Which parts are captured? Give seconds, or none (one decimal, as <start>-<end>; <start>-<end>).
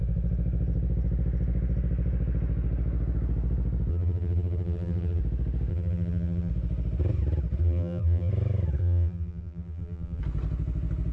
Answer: 0.0-3.9; 5.2-5.7; 6.5-7.6; 8.3-8.8; 10.2-11.1